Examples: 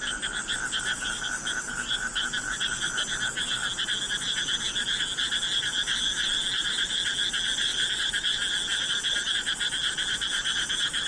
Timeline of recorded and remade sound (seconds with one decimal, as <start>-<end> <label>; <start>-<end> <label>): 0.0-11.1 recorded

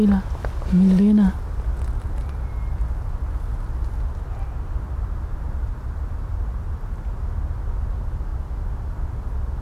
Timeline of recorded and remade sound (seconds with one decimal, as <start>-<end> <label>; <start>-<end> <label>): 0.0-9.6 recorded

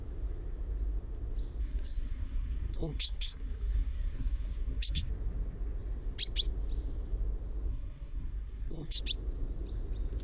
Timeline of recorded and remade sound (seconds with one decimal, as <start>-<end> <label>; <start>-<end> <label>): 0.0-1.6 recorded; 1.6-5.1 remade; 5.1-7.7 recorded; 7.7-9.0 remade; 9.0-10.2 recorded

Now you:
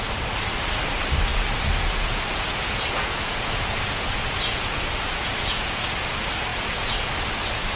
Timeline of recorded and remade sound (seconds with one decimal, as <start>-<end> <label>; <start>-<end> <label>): 0.0-1.3 recorded; 1.3-6.0 remade; 6.0-6.5 recorded; 6.5-7.1 remade; 7.1-7.8 recorded

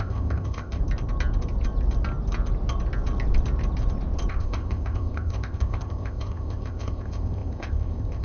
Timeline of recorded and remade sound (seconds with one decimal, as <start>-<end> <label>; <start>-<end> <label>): 0.0-0.8 remade; 0.8-4.3 recorded; 4.3-8.2 remade

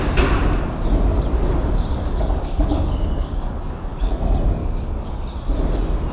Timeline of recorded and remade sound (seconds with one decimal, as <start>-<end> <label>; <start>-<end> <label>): 0.0-1.9 recorded; 1.9-4.1 remade; 4.1-4.6 recorded; 4.6-5.1 remade; 5.1-6.1 recorded